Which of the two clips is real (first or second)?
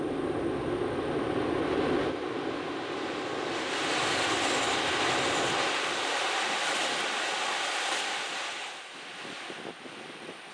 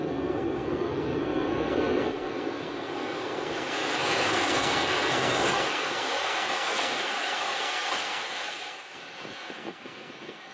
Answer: first